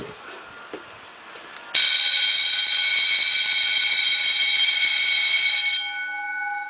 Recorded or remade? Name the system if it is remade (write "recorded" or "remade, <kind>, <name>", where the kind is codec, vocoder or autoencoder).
recorded